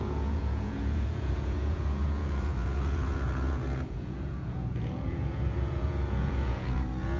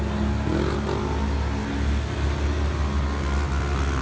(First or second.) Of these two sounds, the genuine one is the second